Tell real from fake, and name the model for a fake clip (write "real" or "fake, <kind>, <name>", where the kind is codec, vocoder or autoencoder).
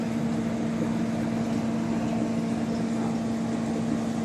real